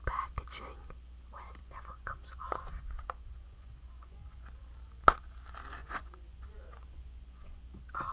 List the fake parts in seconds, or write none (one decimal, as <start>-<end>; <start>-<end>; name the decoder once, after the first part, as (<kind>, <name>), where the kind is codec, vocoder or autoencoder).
1.6-4.6 (vocoder, Vocos); 5.8-7.6